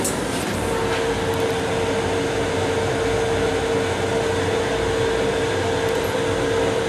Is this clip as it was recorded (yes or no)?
yes